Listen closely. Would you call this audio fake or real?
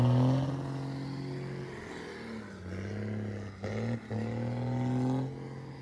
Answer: real